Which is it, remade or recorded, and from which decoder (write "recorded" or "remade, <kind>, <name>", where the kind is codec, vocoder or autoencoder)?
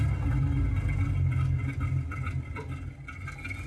recorded